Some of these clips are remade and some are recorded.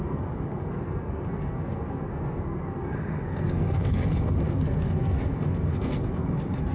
remade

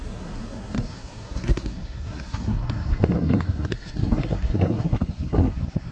remade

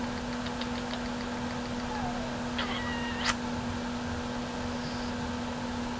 recorded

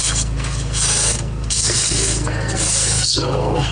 remade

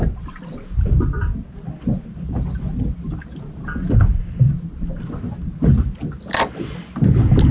recorded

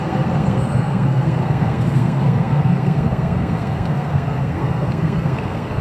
remade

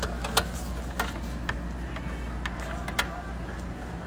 recorded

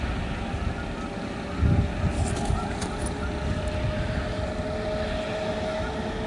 recorded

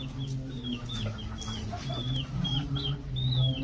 recorded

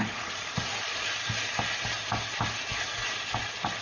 recorded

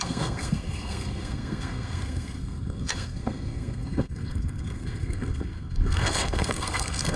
remade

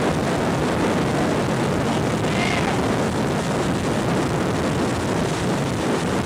recorded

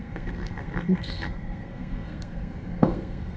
remade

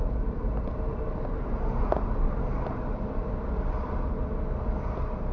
recorded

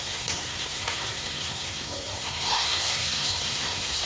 remade